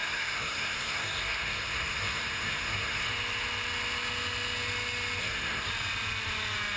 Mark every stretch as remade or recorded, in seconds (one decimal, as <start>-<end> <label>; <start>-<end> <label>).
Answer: 0.0-3.1 remade; 3.1-5.2 recorded; 5.2-5.7 remade; 5.7-6.8 recorded